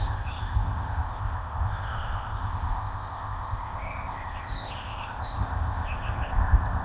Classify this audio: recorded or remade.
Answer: remade